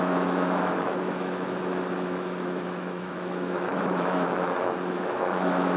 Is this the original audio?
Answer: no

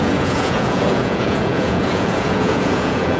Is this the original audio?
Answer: no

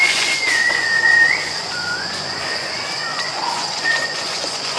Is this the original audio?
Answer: no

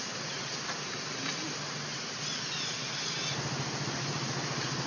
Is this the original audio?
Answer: yes